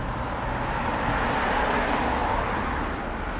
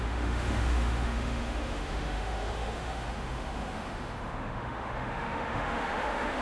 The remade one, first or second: second